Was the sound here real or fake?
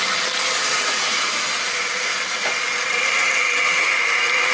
real